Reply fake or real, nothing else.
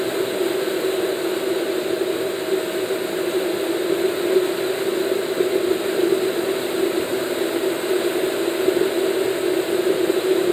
real